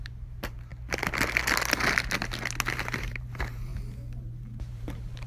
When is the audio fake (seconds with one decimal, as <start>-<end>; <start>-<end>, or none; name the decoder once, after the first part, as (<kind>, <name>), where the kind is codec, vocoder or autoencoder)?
0.0-0.7 (vocoder, BigVGAN v2); 2.7-3.7; 4.2-5.3